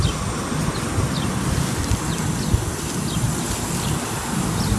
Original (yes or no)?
yes